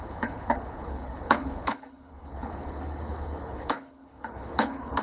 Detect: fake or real fake